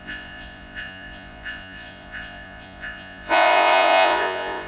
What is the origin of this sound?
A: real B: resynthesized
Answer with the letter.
B